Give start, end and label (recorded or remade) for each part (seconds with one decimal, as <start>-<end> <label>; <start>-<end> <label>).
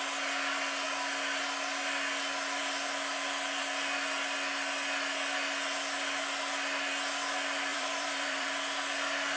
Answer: 0.0-7.7 recorded; 7.7-8.5 remade; 8.5-9.4 recorded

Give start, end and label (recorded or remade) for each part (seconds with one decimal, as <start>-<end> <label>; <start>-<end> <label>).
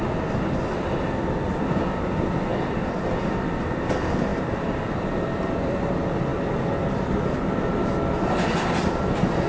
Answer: 0.0-2.5 recorded; 2.5-3.2 remade; 3.2-4.3 recorded; 4.3-5.8 remade; 5.8-9.5 recorded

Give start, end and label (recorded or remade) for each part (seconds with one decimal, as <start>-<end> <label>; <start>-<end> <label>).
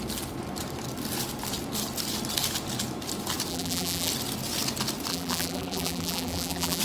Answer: 0.0-3.5 recorded; 3.5-4.1 remade; 4.1-5.1 recorded; 5.1-6.8 remade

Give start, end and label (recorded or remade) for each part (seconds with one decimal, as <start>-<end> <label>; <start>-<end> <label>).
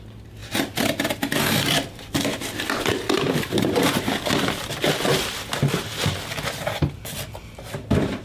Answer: 0.0-0.4 recorded; 0.4-5.3 remade; 5.3-8.2 recorded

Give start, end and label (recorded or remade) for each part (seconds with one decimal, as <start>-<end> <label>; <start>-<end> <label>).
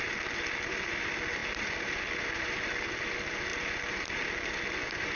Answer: 0.0-5.2 recorded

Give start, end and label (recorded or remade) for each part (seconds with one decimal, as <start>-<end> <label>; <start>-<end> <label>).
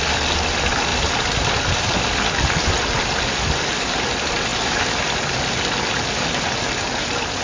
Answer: 0.0-7.4 recorded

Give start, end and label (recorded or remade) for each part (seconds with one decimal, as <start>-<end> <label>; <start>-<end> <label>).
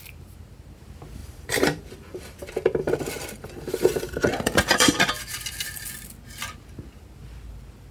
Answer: 0.0-1.2 recorded; 1.2-5.9 remade; 5.9-7.9 recorded